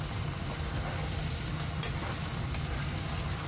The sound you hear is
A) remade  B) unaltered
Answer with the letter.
B